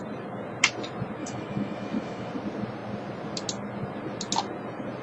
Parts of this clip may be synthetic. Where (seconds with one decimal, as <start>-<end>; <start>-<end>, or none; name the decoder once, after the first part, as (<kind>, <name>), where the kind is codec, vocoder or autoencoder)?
1.2-2.3 (autoencoder, DAC-VAE)

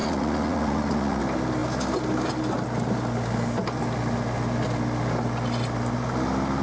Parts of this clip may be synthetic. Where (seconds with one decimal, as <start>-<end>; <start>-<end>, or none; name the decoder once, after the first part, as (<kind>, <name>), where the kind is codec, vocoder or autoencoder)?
0.0-1.2 (vocoder, Vocos)

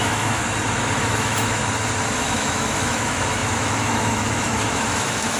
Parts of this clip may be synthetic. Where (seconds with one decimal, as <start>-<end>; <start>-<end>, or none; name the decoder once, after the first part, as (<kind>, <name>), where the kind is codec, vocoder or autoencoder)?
0.0-0.4 (autoencoder, DAC-VAE); 1.0-1.6; 2.2-5.4

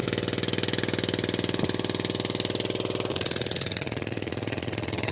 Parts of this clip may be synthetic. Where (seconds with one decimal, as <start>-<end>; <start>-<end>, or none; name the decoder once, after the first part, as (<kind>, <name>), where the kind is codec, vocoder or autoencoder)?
3.1-5.1 (vocoder, Vocos)

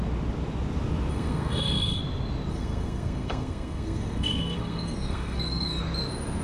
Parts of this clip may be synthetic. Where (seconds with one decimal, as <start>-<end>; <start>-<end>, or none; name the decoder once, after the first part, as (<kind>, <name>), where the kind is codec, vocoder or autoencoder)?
1.1-2.0 (codec, SNAC); 2.5-5.8

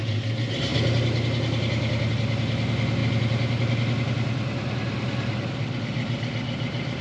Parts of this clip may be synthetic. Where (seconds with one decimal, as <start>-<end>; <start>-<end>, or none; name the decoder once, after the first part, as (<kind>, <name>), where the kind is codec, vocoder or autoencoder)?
none

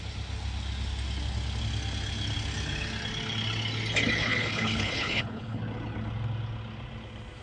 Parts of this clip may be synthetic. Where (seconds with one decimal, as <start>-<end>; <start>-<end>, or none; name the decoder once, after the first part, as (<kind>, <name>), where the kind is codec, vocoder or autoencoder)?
4.2-5.6 (codec, HILCodec)

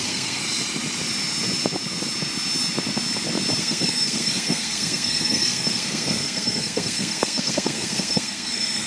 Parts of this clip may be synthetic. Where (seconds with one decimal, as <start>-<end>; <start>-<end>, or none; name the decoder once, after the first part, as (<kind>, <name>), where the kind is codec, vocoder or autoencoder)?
0.0-0.4 (codec, SNAC); 3.6-8.9